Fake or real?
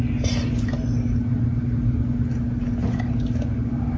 real